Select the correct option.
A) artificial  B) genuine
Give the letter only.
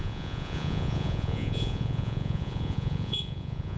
A